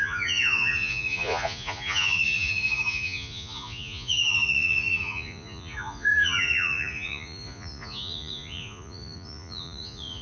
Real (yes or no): no